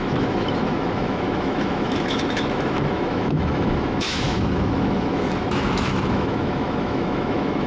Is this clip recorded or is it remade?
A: remade